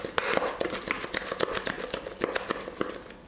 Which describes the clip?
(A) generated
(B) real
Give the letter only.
B